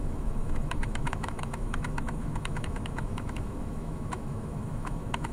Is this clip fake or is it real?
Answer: fake